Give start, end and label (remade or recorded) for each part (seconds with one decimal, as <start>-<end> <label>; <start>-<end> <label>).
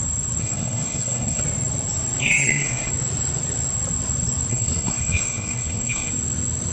0.0-0.4 recorded; 0.4-1.4 remade; 1.4-2.2 recorded; 2.2-2.9 remade; 2.9-4.5 recorded; 4.5-6.1 remade; 6.1-6.7 recorded